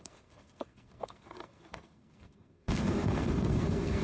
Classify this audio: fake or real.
fake